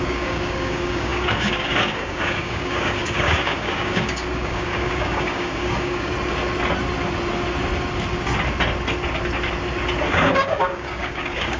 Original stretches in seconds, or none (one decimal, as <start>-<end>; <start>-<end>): 6.1-10.1